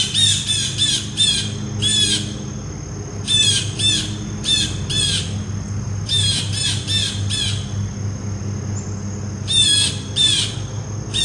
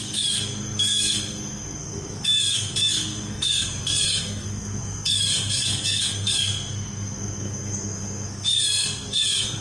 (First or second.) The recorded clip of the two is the first